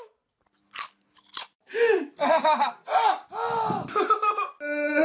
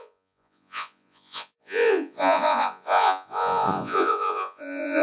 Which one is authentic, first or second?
first